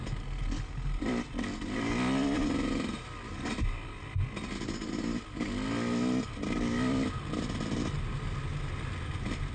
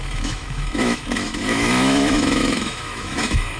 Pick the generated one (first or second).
second